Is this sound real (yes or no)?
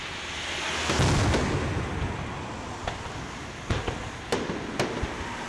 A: yes